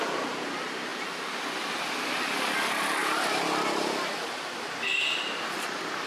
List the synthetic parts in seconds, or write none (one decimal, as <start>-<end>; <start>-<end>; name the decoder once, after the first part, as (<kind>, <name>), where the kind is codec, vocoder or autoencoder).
none